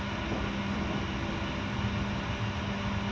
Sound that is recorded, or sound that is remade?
recorded